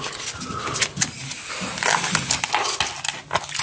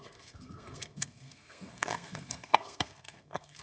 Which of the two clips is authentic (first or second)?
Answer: first